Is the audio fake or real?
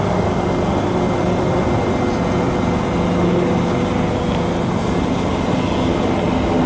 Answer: real